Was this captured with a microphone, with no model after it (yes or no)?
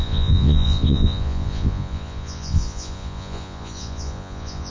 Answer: no